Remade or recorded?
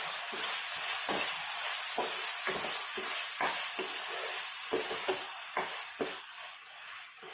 recorded